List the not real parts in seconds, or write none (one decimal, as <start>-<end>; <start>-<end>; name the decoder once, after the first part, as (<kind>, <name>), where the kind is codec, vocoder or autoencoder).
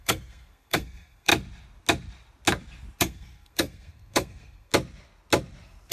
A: 0.0-1.3 (codec, SNAC); 3.0-4.7